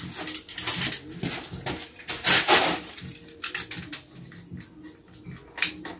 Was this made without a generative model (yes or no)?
yes